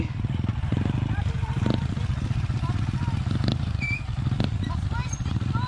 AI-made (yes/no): no